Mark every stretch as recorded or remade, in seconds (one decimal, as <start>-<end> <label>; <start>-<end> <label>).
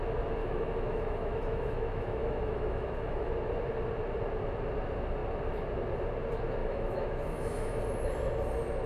0.0-0.4 recorded; 0.4-3.3 remade; 3.3-6.6 recorded; 6.6-7.8 remade; 7.8-8.9 recorded